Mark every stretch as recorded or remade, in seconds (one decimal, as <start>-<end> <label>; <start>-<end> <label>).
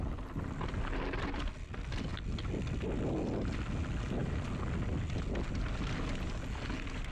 0.0-7.1 recorded